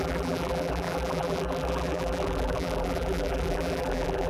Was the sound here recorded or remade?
remade